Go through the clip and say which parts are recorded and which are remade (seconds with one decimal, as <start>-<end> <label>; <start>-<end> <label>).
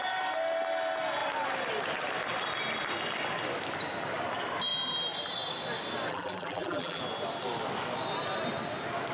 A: 0.0-6.1 recorded; 6.1-7.0 remade; 7.0-9.1 recorded